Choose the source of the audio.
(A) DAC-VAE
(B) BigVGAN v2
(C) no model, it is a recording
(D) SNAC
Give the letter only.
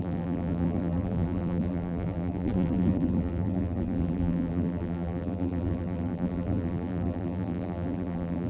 B